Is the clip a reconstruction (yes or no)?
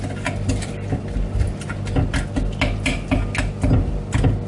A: no